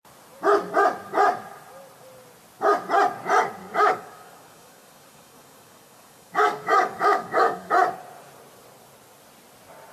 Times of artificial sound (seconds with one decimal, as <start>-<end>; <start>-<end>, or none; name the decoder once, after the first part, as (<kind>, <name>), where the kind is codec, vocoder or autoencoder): 3.6-7.7 (codec, DAC)